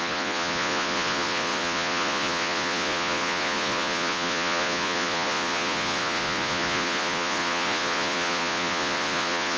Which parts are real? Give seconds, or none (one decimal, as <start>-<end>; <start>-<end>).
none